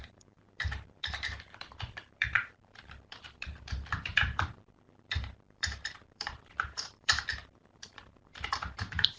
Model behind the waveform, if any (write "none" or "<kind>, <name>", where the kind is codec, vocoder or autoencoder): vocoder, BigVGAN v2